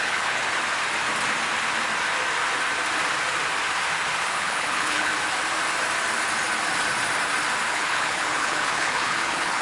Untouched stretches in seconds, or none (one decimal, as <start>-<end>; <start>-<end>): 0.4-4.2; 5.1-7.7